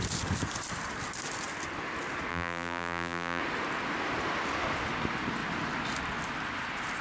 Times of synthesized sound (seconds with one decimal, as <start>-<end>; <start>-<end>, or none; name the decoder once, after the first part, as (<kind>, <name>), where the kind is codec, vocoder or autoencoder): 2.3-3.4 (vocoder, BigVGAN v2)